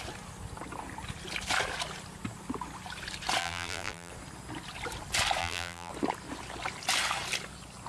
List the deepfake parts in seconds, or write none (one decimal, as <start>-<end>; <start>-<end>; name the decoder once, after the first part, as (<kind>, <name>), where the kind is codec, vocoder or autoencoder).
3.4-4.1 (vocoder, BigVGAN v2); 5.4-5.9